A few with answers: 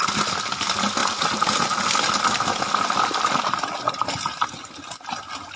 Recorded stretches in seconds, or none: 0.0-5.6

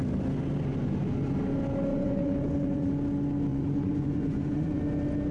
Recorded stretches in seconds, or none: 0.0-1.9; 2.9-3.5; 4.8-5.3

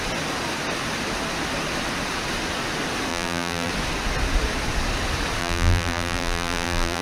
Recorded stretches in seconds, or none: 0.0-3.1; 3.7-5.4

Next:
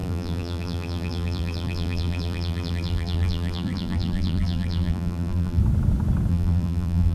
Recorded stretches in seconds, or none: 5.6-6.3